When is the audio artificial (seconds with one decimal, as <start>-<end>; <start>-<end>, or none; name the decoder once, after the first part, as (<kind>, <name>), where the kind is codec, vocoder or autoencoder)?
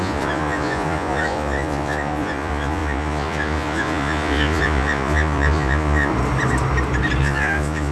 0.0-6.1 (vocoder, Vocos); 7.2-7.9